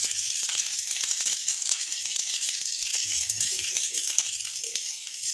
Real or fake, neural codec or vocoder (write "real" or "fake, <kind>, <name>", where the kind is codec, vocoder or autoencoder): fake, codec, DAC